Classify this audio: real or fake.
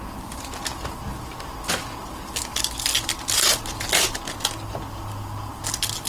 real